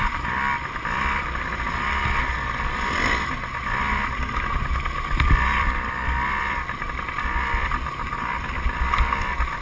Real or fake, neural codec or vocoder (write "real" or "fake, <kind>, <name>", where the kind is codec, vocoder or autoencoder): real